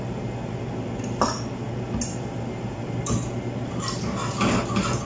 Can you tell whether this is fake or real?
real